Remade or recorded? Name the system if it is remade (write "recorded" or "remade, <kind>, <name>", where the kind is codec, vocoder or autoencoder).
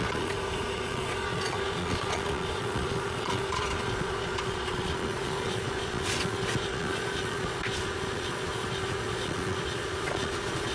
remade, vocoder, Vocos